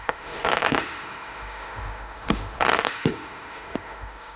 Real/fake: fake